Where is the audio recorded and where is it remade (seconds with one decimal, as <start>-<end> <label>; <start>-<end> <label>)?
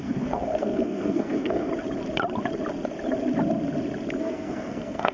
0.0-1.7 remade; 1.7-4.2 recorded; 4.2-5.1 remade